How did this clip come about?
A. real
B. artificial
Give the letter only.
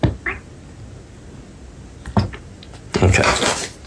A